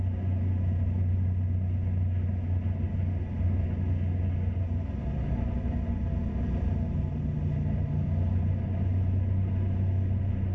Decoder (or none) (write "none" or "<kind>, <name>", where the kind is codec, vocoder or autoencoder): none